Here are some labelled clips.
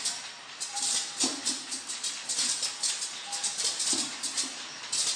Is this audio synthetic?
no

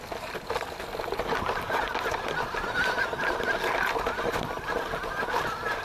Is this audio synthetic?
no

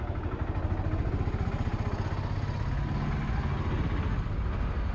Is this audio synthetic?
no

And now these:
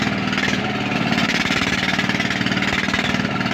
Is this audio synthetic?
no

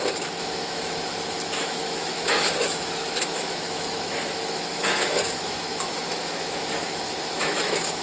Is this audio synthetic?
yes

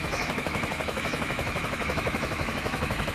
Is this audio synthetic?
yes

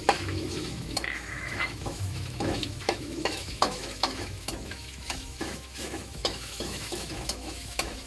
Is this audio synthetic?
yes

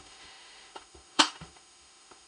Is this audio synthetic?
yes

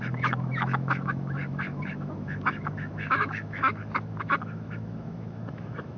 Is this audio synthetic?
yes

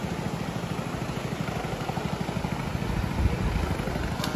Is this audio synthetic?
no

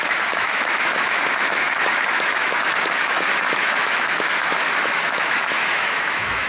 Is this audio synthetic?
yes